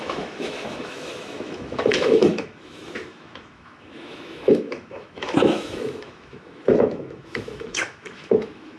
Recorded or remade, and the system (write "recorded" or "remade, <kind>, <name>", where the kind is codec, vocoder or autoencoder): remade, autoencoder, DAC-VAE